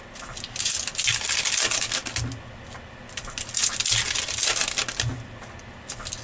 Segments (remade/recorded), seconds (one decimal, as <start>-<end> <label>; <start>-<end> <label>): 0.0-6.2 recorded